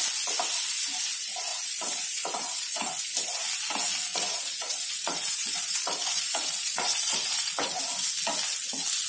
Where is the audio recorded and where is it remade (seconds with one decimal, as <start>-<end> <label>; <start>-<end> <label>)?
0.0-1.5 recorded; 1.5-3.0 remade; 3.0-4.1 recorded; 4.1-7.8 remade; 7.8-9.1 recorded

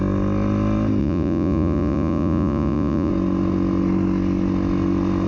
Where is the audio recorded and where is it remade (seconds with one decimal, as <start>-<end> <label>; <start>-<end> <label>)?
0.0-1.0 recorded; 1.0-3.1 remade; 3.1-5.3 recorded

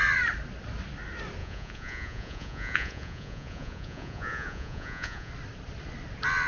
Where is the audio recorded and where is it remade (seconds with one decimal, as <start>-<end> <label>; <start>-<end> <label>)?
0.0-1.4 recorded; 1.4-5.3 remade; 5.3-6.5 recorded

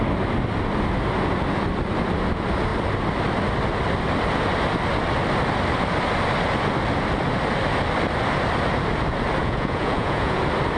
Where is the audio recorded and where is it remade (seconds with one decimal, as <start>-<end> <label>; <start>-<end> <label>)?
0.0-9.4 recorded; 9.4-10.4 remade; 10.4-10.8 recorded

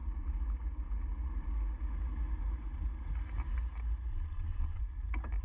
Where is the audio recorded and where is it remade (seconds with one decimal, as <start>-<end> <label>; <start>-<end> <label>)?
0.0-4.1 recorded; 4.1-4.8 remade; 4.8-5.4 recorded

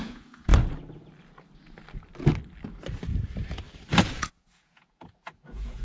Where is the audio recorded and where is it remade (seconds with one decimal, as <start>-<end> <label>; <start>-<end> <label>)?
0.0-0.5 remade; 0.5-4.0 recorded; 4.0-5.8 remade

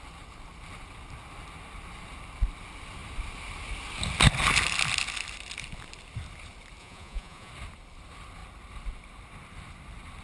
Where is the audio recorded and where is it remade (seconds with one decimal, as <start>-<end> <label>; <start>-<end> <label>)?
0.0-6.8 recorded; 6.8-7.5 remade; 7.5-10.2 recorded